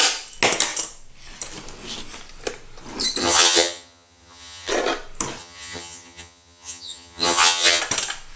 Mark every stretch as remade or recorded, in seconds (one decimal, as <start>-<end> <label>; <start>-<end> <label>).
0.0-3.2 recorded; 3.2-4.7 remade; 4.7-5.4 recorded; 5.4-7.8 remade; 7.8-8.4 recorded